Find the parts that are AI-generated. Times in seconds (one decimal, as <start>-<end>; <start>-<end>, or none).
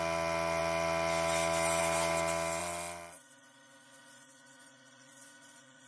2.6-5.9